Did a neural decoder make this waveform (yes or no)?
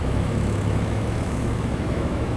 yes